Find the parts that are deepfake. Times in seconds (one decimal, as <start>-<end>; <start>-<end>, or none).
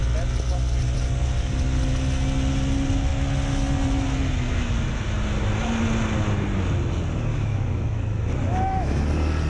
7.3-9.0